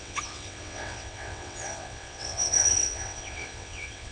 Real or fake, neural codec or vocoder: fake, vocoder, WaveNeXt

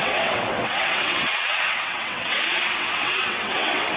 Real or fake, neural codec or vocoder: fake, vocoder, WaveNeXt